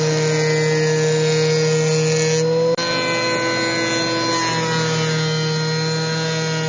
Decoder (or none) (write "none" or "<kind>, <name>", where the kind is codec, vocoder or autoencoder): none